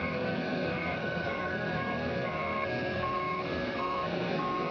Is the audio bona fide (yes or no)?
no